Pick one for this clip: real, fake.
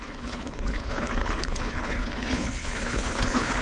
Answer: fake